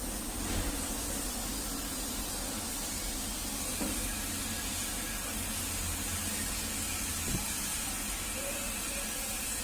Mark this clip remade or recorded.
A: recorded